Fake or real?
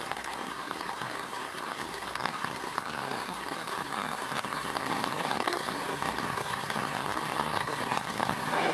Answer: fake